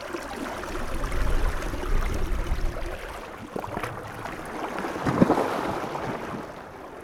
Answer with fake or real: real